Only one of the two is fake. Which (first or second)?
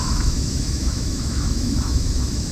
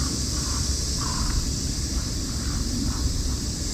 first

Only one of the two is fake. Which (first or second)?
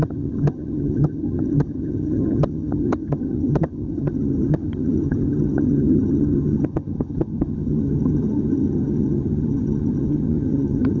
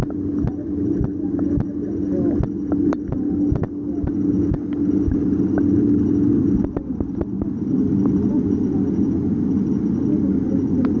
first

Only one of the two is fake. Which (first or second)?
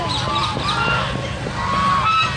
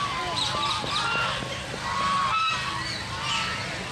second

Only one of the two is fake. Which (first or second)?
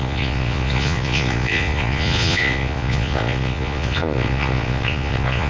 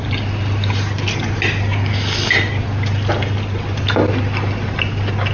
first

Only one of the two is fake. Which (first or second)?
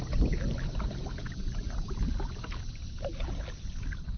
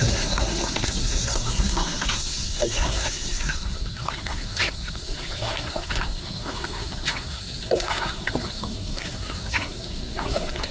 second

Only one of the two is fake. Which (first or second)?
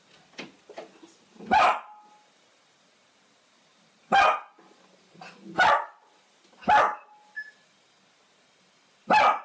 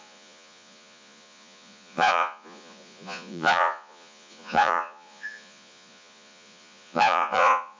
second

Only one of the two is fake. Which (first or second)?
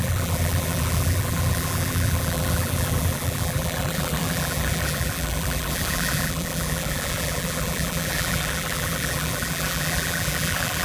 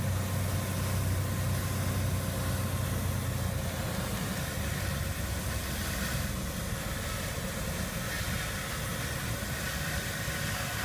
first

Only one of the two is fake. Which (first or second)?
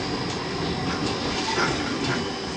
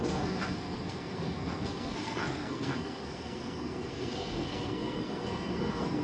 second